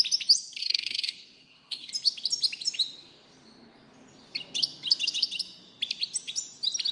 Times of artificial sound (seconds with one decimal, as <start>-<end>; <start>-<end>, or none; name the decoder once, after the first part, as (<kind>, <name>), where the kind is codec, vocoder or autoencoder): 0.6-1.9 (codec, SNAC)